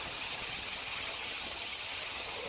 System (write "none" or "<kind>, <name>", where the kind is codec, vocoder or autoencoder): vocoder, HiFi-GAN